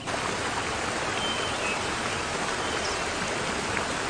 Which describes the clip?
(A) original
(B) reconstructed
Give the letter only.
A